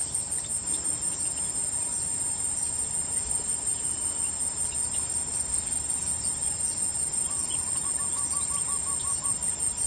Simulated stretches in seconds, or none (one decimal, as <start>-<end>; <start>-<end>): none